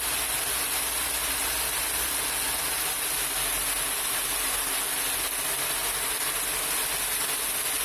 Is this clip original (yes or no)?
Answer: yes